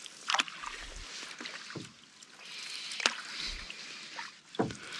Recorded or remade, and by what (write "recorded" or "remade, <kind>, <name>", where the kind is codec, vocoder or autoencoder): recorded